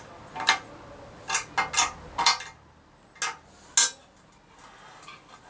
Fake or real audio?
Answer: real